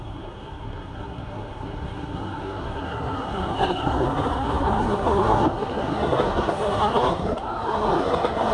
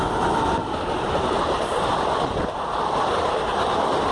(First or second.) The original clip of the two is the second